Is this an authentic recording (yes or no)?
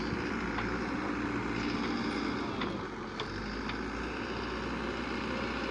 yes